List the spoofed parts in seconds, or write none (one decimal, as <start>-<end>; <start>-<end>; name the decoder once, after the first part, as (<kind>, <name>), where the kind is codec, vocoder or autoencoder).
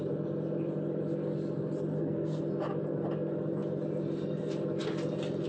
1.9-2.4 (codec, SNAC)